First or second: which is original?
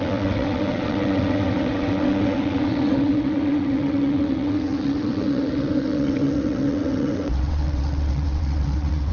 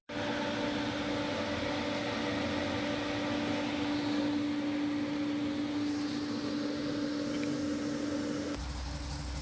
second